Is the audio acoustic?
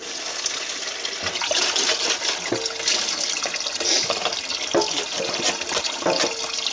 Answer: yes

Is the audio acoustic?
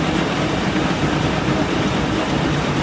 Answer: no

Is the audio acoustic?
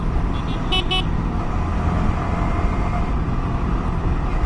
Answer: yes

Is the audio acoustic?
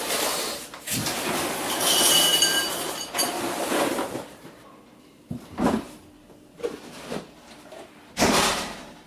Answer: no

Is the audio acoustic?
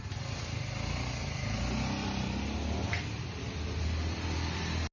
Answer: yes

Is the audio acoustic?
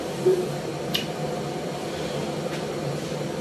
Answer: no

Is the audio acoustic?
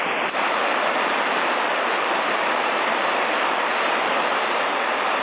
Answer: no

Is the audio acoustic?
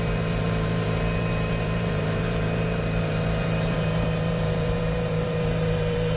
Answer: no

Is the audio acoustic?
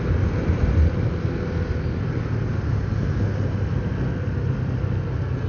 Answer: yes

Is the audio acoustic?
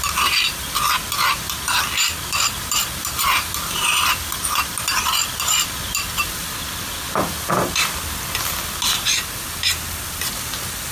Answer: no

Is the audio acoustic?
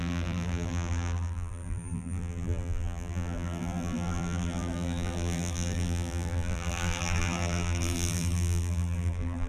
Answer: no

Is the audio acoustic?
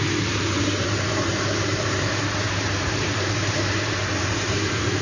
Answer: no